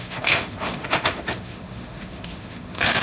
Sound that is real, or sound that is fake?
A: fake